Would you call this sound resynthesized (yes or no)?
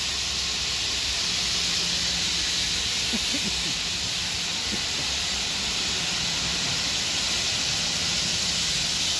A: no